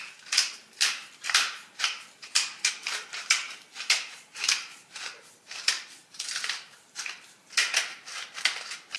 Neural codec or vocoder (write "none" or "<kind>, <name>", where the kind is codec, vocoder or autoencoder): vocoder, BigVGAN v2